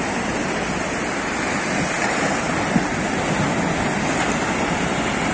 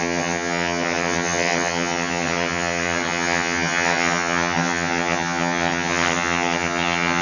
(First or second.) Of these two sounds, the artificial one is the second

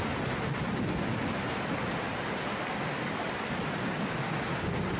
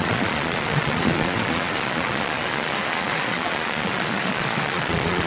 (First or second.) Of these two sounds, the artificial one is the second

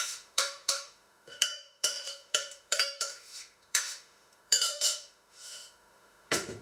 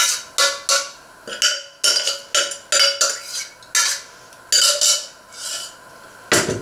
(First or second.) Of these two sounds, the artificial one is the first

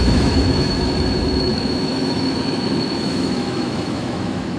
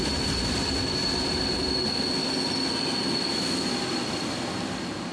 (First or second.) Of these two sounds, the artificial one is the first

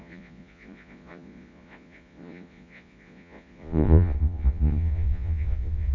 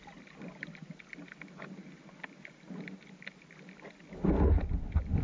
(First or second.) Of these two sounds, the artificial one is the first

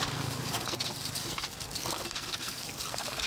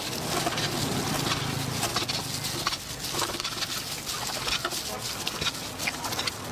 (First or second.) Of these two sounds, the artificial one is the first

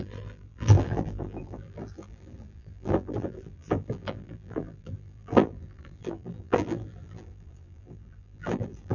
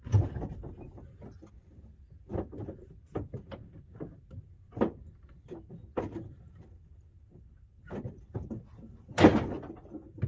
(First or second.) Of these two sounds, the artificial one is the first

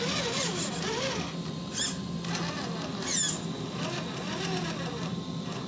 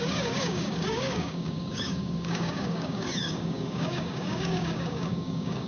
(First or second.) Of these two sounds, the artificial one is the second